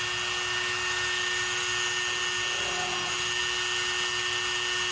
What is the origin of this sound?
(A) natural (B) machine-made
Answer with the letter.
A